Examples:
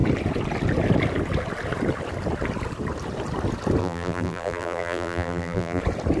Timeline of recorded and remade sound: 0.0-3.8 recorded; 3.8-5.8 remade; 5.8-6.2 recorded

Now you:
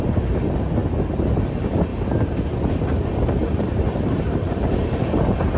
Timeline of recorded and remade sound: 0.0-0.8 remade; 0.8-1.5 recorded; 1.5-1.9 remade; 1.9-2.7 recorded; 2.7-5.6 remade

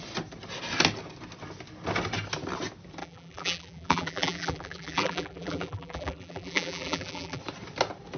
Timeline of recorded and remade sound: 0.0-3.0 recorded; 3.0-7.4 remade; 7.4-8.2 recorded